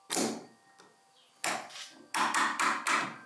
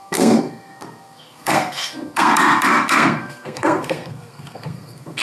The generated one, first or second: second